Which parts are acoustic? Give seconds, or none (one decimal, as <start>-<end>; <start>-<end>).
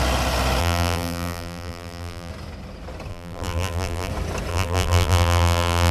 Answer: 0.0-0.6; 2.3-3.1; 4.1-4.5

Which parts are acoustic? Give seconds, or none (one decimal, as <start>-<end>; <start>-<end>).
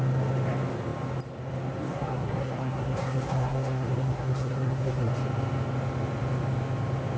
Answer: 0.0-1.9; 5.1-7.2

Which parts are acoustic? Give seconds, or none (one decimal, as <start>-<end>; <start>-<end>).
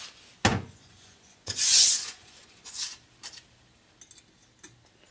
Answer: 0.0-0.5; 2.8-5.1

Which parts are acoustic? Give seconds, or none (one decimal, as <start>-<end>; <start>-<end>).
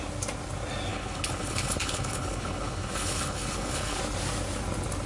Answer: 0.0-0.9; 4.0-5.1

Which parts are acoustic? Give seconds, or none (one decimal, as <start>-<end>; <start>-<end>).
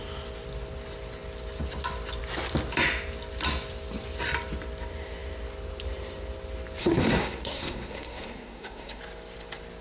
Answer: 0.0-6.8; 9.0-9.8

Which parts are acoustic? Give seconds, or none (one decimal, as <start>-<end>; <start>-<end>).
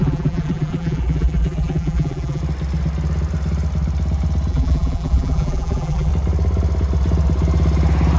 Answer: 2.4-4.5; 6.1-8.2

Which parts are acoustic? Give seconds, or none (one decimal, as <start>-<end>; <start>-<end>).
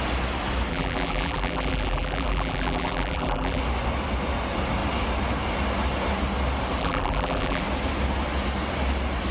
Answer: 0.0-0.7; 3.6-6.8; 7.6-9.3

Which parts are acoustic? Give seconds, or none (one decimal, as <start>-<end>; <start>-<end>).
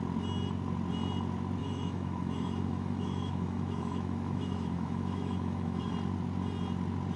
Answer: 0.0-1.6; 5.9-7.2